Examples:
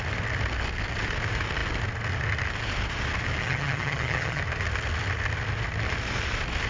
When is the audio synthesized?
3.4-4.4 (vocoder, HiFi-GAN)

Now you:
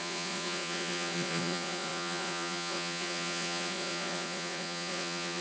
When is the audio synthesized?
0.0-5.4 (vocoder, Vocos)